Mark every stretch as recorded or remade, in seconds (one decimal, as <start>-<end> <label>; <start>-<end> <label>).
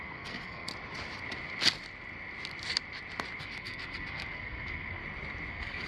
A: 0.0-0.7 remade; 0.7-3.4 recorded; 3.4-5.0 remade; 5.0-5.5 recorded; 5.5-5.9 remade